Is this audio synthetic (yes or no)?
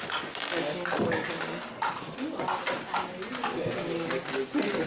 no